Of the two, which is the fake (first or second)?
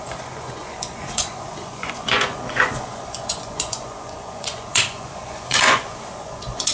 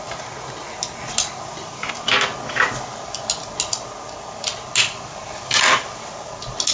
first